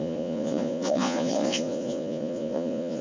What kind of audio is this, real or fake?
fake